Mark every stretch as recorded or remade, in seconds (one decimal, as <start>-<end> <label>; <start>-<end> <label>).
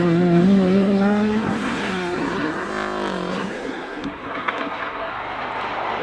0.0-2.7 remade; 2.7-3.3 recorded; 3.3-5.1 remade; 5.1-6.0 recorded